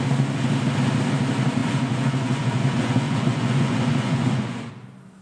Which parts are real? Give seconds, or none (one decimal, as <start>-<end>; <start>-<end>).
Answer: 0.0-1.6; 4.7-5.2